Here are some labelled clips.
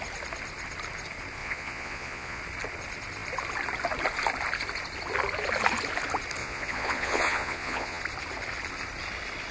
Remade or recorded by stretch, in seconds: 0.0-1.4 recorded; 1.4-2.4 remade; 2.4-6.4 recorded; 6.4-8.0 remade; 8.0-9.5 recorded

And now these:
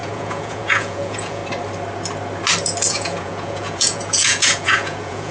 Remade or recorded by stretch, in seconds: 0.0-1.4 remade; 1.4-2.9 recorded; 2.9-5.3 remade

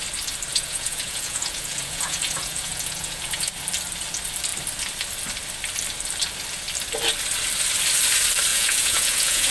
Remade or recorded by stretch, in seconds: 0.0-0.5 recorded; 0.5-3.5 remade; 3.5-8.5 recorded; 8.5-9.5 remade

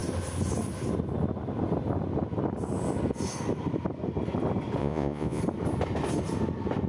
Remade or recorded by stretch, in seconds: 0.0-4.8 recorded; 4.8-5.4 remade; 5.4-6.9 recorded